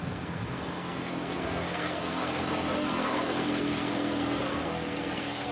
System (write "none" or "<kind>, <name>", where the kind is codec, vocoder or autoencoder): codec, SNAC